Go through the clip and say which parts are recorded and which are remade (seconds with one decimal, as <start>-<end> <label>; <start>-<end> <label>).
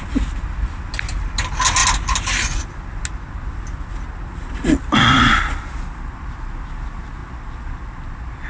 0.0-8.5 recorded